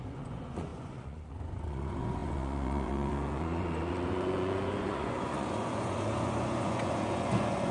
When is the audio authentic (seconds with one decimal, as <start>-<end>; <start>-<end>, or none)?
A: none